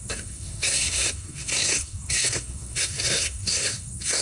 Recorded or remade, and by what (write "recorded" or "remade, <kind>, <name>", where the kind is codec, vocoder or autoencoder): remade, codec, SNAC